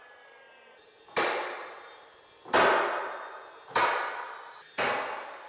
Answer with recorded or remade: recorded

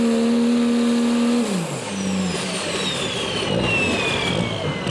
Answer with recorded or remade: recorded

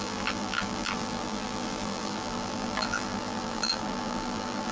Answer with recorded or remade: remade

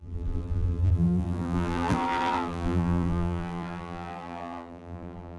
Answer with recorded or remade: remade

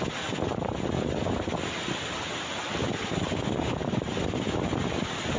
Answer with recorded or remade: recorded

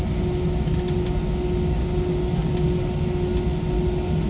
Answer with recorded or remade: recorded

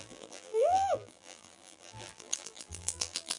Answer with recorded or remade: remade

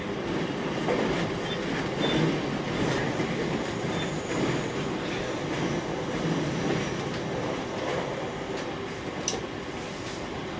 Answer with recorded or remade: recorded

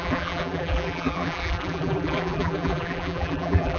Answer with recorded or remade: remade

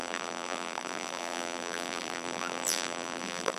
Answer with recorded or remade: remade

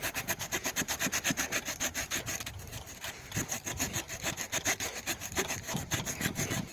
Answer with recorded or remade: remade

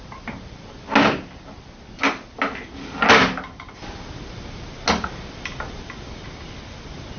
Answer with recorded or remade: recorded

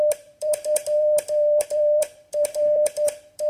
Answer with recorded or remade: remade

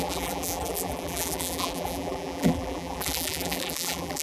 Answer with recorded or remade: remade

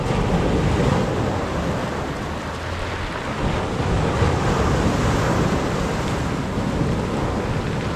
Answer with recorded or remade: recorded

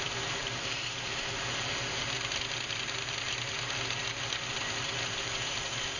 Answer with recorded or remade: remade